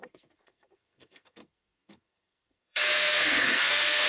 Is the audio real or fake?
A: fake